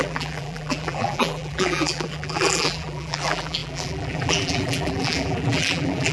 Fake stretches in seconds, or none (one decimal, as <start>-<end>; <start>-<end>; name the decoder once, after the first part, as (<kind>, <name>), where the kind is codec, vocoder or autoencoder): 0.0-6.1 (vocoder, BigVGAN v2)